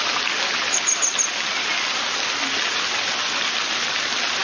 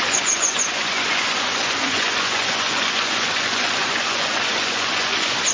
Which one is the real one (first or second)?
first